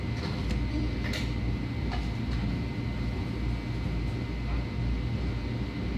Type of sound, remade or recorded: recorded